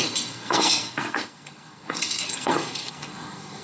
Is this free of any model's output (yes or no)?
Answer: no